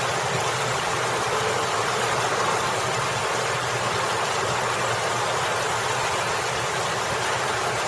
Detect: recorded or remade recorded